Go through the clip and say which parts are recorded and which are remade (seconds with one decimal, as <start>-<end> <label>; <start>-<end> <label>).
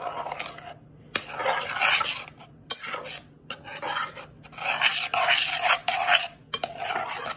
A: 0.0-7.4 recorded